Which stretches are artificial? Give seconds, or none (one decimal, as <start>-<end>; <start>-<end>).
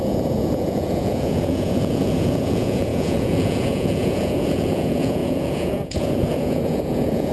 0.0-7.3